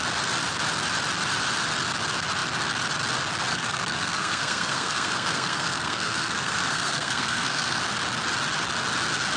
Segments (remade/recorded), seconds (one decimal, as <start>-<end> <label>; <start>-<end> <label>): 0.0-3.5 recorded; 3.5-7.8 remade; 7.8-9.4 recorded